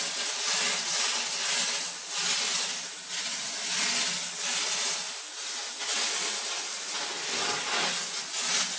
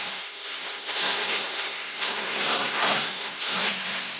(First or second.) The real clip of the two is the first